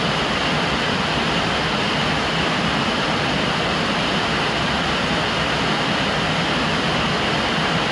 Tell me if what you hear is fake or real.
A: real